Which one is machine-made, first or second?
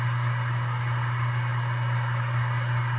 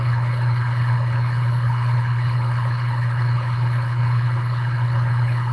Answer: second